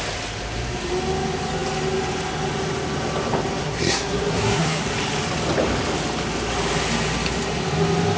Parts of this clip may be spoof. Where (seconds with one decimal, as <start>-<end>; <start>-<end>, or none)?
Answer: 3.6-4.8